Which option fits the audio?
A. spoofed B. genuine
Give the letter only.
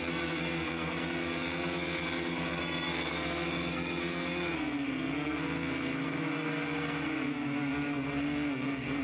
A